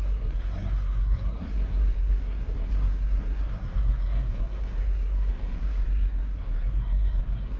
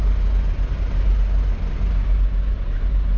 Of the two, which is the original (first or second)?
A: second